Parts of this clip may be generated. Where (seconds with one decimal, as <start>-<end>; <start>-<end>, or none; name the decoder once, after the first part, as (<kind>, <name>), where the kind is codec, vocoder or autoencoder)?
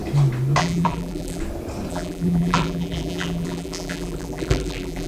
0.6-1.4 (vocoder, BigVGAN v2); 1.9-5.1